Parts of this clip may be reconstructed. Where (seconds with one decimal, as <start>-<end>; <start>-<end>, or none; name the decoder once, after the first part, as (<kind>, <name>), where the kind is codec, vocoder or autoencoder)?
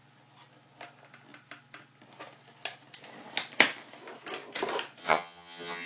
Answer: 5.0-5.9 (vocoder, HiFi-GAN)